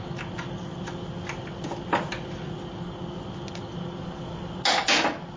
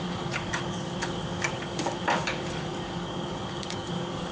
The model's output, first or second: second